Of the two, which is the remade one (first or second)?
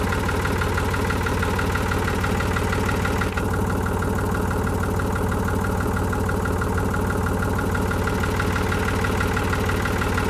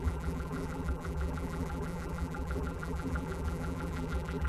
second